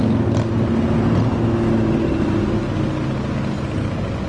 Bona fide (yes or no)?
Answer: yes